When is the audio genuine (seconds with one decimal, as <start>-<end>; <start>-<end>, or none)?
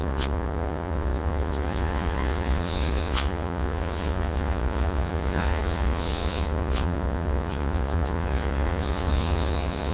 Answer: none